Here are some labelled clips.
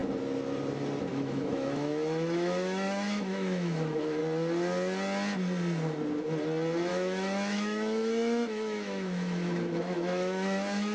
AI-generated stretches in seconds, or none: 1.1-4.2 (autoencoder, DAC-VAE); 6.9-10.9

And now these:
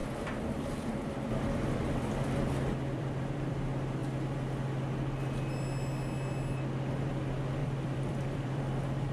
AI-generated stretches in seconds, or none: 0.0-3.5 (vocoder, BigVGAN v2); 7.6-8.6

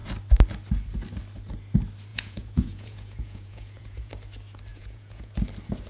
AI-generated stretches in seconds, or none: 2.1-4.1 (vocoder, Vocos); 4.7-5.3

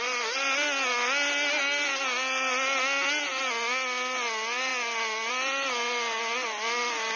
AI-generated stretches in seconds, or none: none